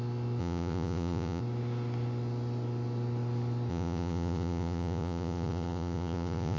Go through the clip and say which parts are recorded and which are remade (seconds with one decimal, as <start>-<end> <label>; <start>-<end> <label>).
0.0-0.4 recorded; 0.4-1.4 remade; 1.4-3.7 recorded; 3.7-6.6 remade